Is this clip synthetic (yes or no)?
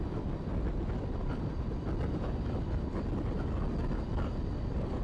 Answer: no